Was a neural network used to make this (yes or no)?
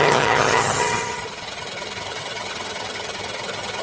yes